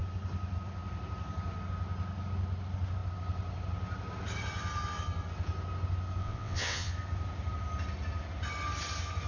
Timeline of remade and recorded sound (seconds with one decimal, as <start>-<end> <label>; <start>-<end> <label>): 0.0-6.2 recorded; 6.2-6.9 remade; 6.9-9.3 recorded